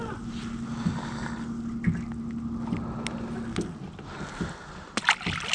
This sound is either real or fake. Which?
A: real